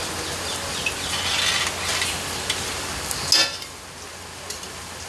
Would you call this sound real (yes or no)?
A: yes